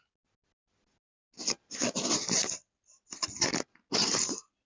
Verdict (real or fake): real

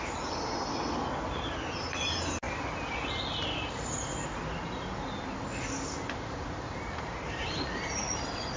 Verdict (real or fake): real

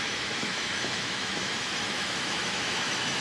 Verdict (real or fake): fake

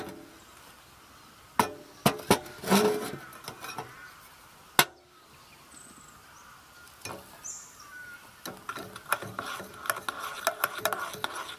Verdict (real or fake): real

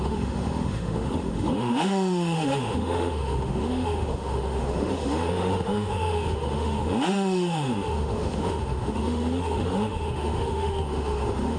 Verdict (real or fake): fake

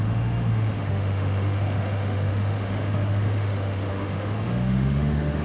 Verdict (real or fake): fake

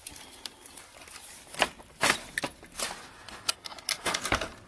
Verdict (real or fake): real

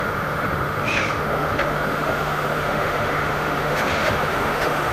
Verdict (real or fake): fake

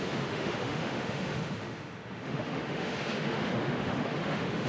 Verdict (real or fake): fake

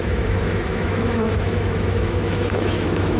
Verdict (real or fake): fake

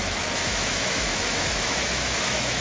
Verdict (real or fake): fake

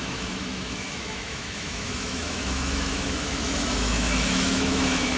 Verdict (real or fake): fake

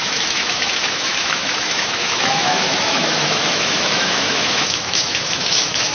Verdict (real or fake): fake